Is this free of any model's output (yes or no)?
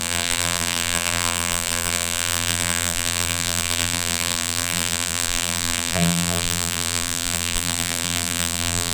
no